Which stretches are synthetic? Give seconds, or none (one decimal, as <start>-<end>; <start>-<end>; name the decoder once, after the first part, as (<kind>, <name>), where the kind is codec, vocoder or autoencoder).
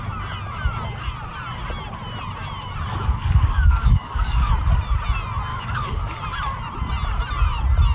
2.9-4.5 (codec, DAC); 5.5-6.1